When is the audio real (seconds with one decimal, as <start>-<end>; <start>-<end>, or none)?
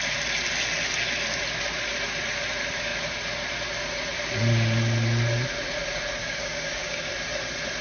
0.0-6.2; 7.1-7.8